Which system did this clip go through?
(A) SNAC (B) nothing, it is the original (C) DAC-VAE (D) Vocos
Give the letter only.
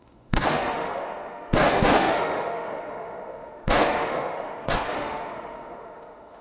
C